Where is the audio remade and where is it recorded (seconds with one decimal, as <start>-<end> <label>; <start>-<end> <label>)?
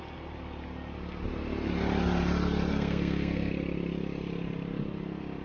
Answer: 0.0-2.7 recorded; 2.7-3.5 remade; 3.5-5.4 recorded